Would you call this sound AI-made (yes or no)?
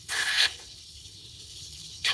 yes